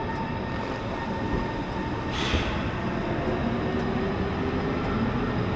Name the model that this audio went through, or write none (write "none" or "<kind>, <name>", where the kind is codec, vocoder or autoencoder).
none